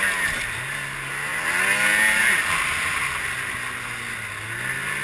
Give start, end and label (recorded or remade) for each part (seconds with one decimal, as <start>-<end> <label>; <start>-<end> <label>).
0.0-5.0 recorded